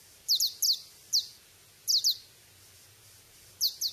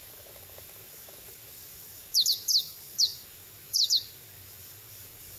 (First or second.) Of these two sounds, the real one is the first